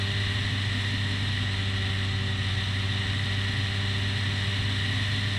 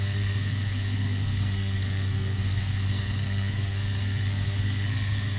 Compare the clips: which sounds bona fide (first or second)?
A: first